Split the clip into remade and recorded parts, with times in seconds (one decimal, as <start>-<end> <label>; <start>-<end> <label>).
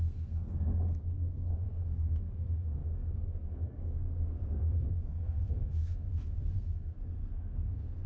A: 0.0-0.7 remade; 0.7-1.5 recorded; 1.5-8.1 remade